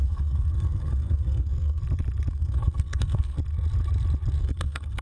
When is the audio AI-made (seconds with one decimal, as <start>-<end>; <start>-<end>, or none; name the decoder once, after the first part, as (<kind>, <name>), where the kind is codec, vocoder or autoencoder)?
0.0-1.8 (codec, SNAC); 2.3-3.4; 4.4-5.0